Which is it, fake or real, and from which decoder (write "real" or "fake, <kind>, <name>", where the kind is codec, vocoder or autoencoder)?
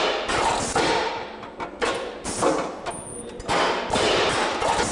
real